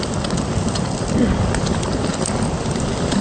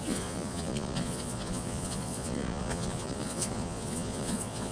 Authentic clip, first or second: first